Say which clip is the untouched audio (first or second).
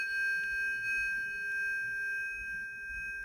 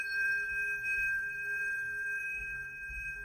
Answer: first